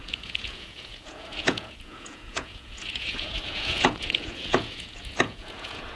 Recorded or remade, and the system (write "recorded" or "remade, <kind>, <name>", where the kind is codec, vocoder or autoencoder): remade, vocoder, Vocos